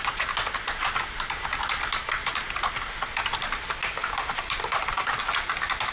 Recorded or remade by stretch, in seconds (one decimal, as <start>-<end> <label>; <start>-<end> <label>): 0.0-4.0 recorded; 4.0-5.2 remade; 5.2-5.9 recorded